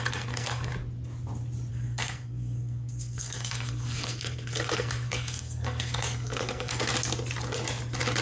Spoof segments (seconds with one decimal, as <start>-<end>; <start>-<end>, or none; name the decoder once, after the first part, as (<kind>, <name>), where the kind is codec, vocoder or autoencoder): 0.0-0.7 (codec, SNAC); 1.7-6.9